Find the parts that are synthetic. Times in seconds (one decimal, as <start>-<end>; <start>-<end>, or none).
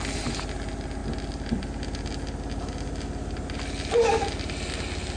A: none